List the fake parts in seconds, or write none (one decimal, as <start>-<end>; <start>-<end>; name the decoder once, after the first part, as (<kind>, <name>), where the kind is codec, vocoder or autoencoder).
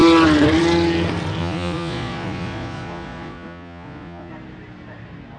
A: 1.4-4.3 (vocoder, Vocos)